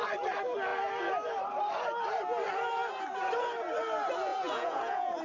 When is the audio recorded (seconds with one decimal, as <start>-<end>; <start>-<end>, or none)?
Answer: 0.0-4.3